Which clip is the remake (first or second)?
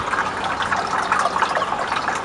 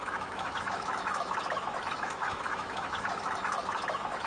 second